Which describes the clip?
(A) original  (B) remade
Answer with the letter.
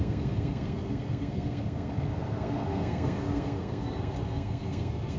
B